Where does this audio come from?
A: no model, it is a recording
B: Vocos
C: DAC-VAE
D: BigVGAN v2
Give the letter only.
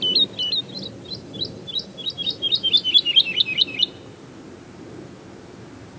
A